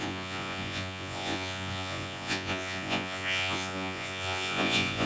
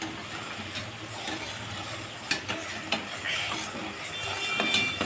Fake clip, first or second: first